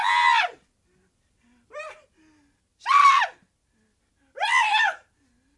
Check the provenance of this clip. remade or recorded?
recorded